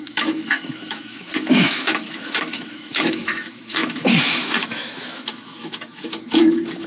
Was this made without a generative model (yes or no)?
no